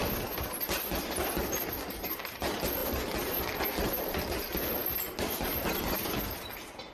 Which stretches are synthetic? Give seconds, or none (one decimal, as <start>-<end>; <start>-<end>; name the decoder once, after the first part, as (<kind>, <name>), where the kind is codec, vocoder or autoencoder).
none